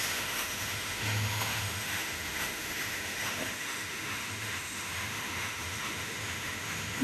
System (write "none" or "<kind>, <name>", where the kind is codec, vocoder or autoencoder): autoencoder, DAC-VAE